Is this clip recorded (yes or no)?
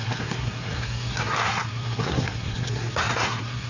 no